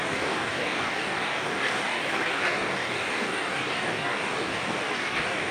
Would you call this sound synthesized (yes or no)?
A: yes